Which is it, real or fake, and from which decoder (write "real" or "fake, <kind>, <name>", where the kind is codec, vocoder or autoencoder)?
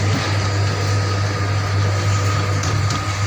real